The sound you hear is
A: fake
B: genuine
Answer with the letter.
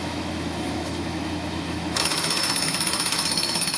A